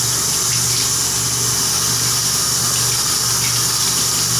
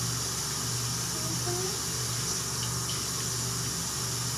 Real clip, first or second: second